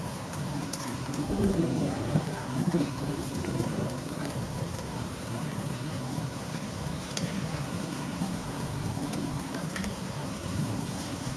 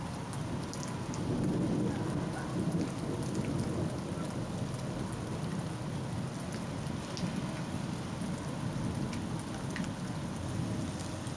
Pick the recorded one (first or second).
second